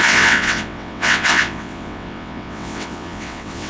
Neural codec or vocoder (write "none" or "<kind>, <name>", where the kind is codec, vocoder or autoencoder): vocoder, WaveNeXt